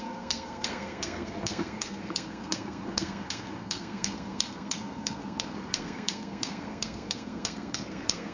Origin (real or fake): fake